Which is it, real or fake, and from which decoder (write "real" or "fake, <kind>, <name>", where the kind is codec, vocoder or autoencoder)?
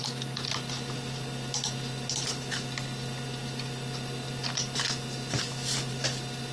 real